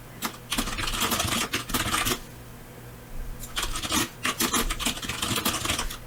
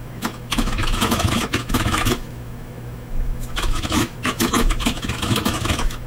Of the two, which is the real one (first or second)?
first